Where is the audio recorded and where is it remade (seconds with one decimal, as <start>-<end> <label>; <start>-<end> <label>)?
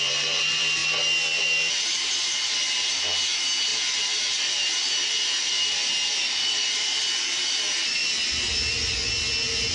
0.0-0.8 remade; 0.8-1.4 recorded; 1.4-8.0 remade; 8.0-9.7 recorded